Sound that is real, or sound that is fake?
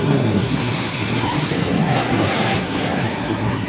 fake